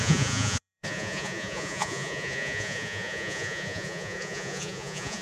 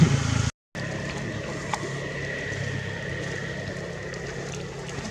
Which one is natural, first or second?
second